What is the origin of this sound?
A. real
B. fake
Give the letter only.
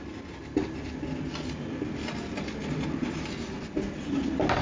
A